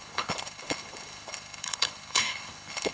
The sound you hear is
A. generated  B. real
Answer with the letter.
A